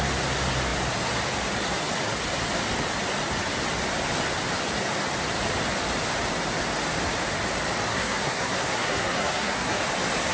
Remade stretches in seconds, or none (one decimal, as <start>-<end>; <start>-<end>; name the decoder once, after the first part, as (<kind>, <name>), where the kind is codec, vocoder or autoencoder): 7.9-9.8 (codec, SNAC)